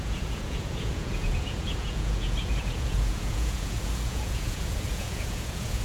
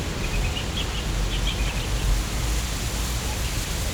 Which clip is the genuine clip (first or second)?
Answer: second